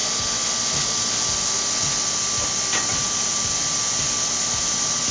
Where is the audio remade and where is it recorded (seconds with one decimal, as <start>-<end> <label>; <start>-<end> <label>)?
0.0-5.1 recorded

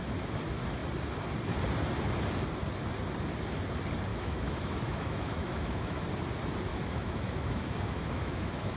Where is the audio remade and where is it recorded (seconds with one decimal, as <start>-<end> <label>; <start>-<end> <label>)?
0.0-4.1 recorded; 4.1-6.0 remade; 6.0-6.7 recorded; 6.7-8.8 remade

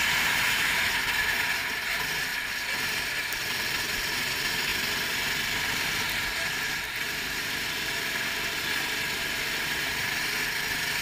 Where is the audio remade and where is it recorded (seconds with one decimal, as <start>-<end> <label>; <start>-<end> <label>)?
0.0-11.0 recorded

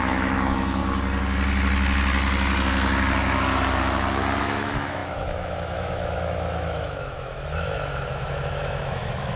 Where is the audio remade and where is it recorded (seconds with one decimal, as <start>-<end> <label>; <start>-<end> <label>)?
0.0-0.8 remade; 0.8-4.4 recorded; 4.4-9.4 remade

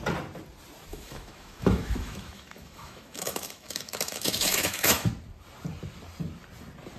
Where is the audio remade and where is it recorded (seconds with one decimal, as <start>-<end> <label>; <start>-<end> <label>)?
0.0-0.9 recorded; 0.9-5.1 remade; 5.1-7.0 recorded

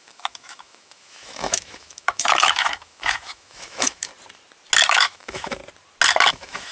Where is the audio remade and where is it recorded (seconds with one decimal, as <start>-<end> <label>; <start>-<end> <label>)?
0.0-4.1 remade; 4.1-4.9 recorded; 4.9-5.6 remade; 5.6-6.3 recorded; 6.3-6.7 remade